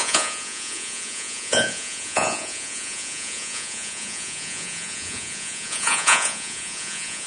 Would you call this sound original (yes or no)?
no